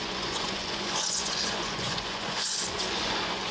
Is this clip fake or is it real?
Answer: fake